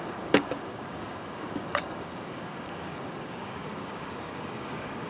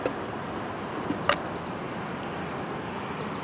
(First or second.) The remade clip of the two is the first